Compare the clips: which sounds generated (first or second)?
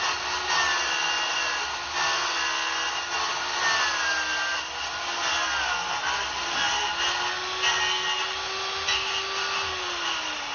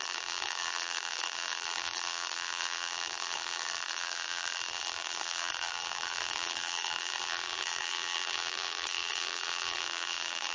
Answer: second